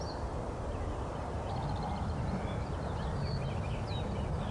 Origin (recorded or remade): recorded